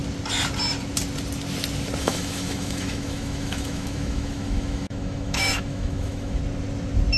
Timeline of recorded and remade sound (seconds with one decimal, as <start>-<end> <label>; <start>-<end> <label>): 0.0-2.0 recorded; 2.0-6.4 remade; 6.4-7.2 recorded